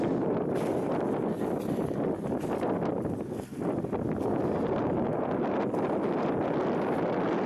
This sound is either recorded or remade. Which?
recorded